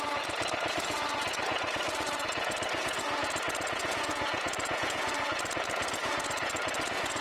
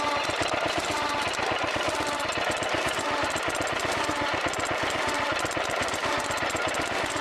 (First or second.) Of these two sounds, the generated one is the first